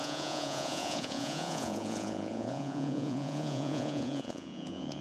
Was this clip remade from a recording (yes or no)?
yes